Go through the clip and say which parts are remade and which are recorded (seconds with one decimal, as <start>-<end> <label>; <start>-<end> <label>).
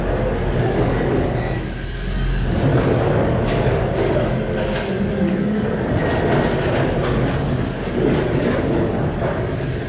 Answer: 0.0-6.0 remade; 6.0-7.2 recorded; 7.2-9.9 remade